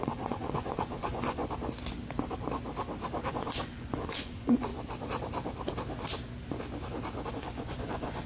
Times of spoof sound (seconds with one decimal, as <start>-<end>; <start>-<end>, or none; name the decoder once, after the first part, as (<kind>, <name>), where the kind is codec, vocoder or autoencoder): 0.0-1.4 (vocoder, Vocos); 3.3-4.7; 7.3-8.3